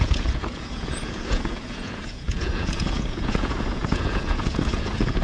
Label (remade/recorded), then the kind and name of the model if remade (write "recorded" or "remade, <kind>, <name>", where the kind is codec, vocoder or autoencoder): remade, vocoder, Vocos